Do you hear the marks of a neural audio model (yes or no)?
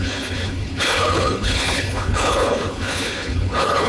yes